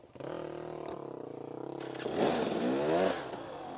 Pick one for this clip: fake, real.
real